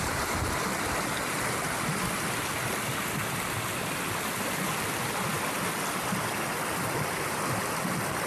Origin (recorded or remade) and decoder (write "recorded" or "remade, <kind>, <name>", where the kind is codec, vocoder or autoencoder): recorded